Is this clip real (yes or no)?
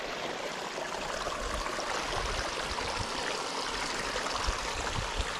yes